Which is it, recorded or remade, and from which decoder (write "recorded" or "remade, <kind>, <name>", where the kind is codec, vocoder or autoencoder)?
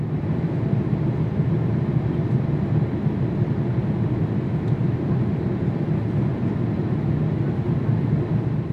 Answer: recorded